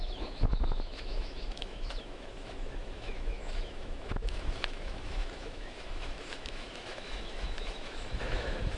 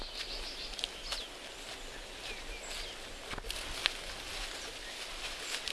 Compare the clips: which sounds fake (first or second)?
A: first